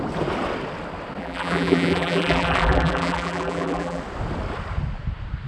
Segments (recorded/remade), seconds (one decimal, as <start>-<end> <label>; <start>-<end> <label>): 0.0-1.2 recorded; 1.2-4.0 remade; 4.0-5.5 recorded